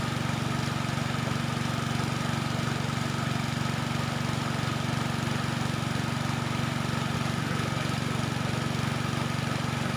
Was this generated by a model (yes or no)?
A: no